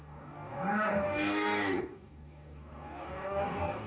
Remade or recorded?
remade